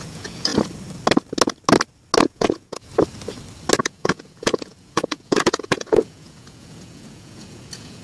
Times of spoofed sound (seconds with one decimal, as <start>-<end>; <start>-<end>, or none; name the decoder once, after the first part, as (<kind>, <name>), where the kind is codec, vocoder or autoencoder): 0.0-0.5 (vocoder, Vocos); 2.2-2.9; 3.8-8.0